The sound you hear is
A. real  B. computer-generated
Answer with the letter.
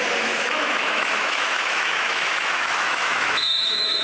B